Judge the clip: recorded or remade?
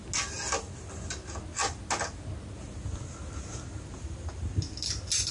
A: recorded